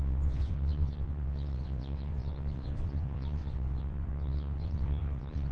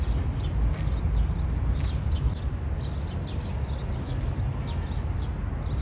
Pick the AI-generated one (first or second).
first